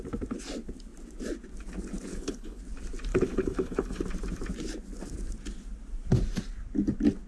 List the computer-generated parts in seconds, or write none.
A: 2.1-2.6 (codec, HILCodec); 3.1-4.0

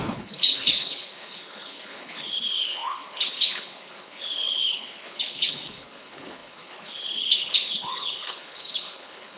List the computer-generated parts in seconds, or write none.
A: 0.0-9.4 (codec, HILCodec)

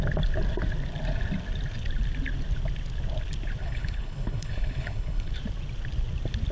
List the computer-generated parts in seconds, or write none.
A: 3.6-5.3 (codec, HILCodec)